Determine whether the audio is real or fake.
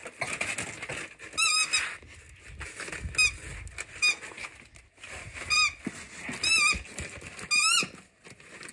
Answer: real